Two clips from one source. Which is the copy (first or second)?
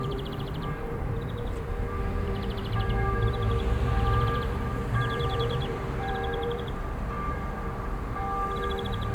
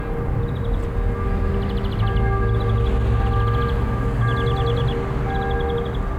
first